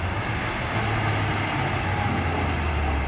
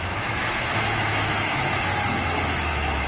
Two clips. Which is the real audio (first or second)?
first